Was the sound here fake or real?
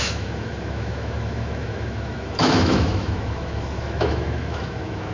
fake